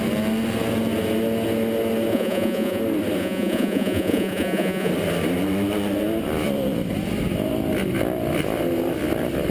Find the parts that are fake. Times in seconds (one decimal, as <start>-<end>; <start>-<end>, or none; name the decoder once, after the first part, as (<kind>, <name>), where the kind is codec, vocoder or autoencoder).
2.1-2.8 (vocoder, Vocos); 3.2-4.9